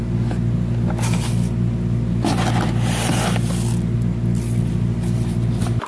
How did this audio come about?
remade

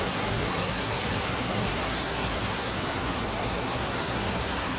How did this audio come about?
remade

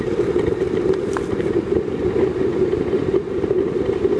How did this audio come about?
recorded